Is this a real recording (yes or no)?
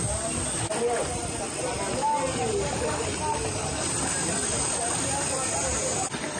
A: yes